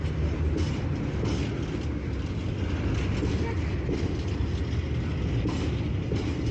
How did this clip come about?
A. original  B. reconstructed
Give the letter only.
A